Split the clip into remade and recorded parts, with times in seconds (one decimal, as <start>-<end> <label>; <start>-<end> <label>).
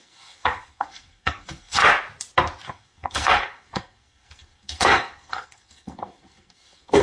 0.0-1.8 remade; 1.8-2.7 recorded; 2.7-7.0 remade